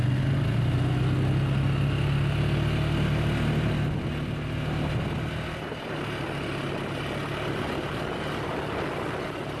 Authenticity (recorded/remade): recorded